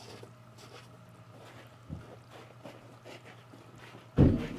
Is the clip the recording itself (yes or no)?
yes